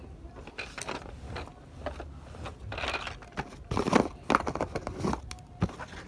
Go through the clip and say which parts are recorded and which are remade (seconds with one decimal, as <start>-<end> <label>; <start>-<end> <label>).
0.0-6.1 recorded